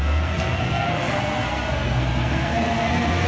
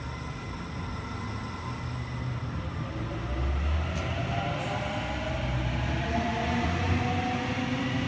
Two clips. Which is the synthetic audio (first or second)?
first